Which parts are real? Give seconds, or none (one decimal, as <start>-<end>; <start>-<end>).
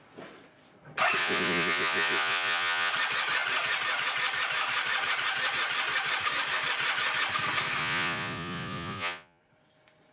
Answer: 0.0-1.2; 2.9-7.8; 9.4-10.1